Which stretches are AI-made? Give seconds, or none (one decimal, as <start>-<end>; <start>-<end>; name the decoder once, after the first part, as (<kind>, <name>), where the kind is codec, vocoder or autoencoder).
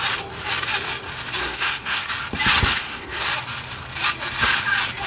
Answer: 1.4-2.1 (codec, SNAC); 2.8-3.3